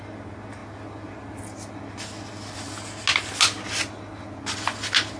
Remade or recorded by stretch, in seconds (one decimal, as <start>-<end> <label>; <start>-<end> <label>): 0.0-5.2 recorded